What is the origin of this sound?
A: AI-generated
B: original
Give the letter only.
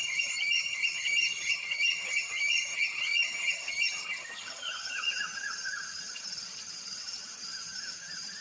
A